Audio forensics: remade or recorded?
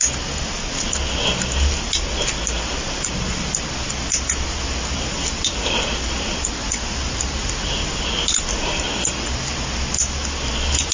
recorded